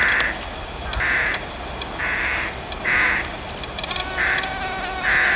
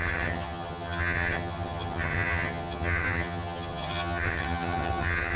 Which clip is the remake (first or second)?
second